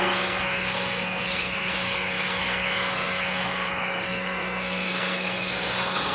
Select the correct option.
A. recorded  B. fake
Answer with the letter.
B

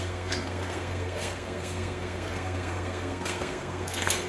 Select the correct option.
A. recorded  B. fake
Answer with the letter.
B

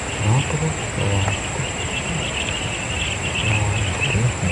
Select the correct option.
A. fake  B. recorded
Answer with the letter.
B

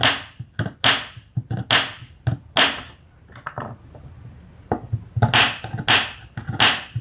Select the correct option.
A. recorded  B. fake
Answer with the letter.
A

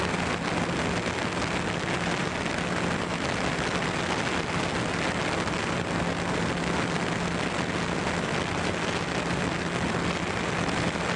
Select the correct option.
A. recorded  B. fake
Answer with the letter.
A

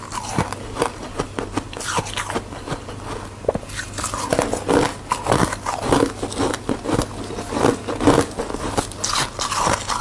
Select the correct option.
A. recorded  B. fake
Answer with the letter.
A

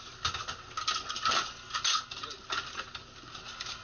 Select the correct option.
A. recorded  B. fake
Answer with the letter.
A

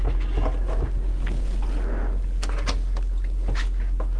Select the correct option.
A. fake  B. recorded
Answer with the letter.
B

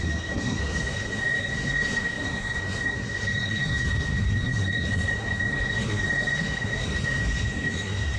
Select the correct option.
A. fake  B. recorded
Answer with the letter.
A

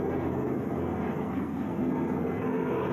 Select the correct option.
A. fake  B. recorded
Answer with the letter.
A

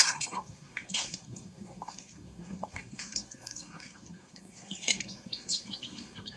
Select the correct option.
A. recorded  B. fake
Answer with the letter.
B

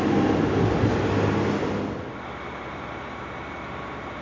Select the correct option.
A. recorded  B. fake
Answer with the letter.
A